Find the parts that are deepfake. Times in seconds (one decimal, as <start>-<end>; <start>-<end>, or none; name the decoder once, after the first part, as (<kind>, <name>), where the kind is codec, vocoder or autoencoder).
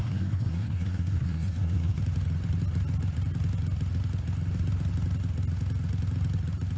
0.0-2.0 (codec, SNAC)